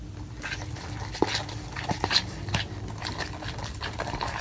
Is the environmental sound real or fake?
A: real